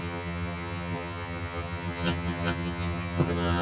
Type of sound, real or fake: fake